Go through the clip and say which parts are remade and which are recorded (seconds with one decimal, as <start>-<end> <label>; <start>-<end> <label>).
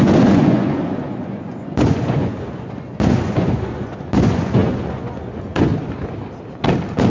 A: 0.0-5.7 remade; 5.7-7.1 recorded